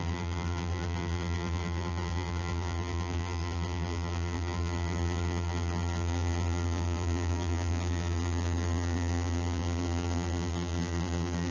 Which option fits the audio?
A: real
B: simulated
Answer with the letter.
B